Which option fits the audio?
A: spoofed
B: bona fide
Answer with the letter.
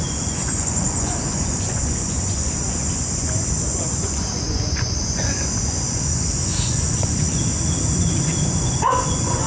A